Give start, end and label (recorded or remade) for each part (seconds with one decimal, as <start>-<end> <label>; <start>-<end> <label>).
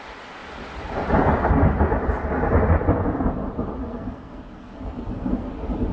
0.0-3.8 recorded; 3.8-5.5 remade; 5.5-5.9 recorded